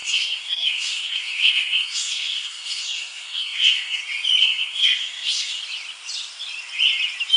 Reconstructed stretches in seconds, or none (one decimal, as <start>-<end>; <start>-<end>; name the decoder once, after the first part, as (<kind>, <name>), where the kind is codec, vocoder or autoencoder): 0.0-4.0 (codec, SNAC); 4.4-5.6